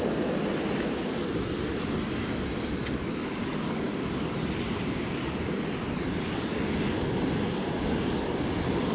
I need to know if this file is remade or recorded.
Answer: recorded